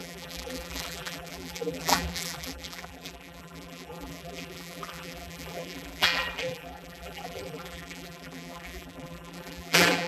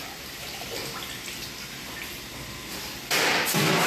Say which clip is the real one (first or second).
second